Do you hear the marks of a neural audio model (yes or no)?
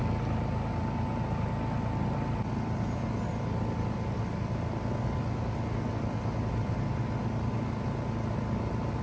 no